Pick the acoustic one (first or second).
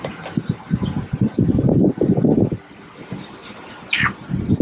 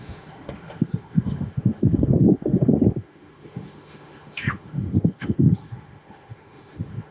first